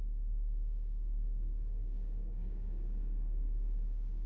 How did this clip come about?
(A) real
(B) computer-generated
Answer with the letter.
B